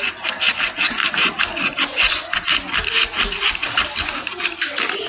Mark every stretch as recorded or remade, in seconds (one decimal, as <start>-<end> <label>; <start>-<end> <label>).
0.0-1.0 recorded; 1.0-4.1 remade; 4.1-5.1 recorded